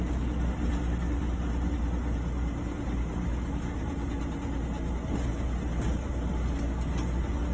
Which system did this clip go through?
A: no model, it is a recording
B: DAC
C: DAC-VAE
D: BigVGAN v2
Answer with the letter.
A